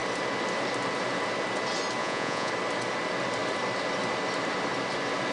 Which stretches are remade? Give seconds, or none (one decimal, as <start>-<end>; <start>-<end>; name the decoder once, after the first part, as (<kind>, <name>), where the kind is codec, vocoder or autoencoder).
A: 2.0-2.5 (vocoder, Vocos)